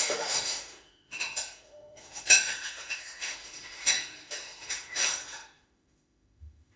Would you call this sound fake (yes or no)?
yes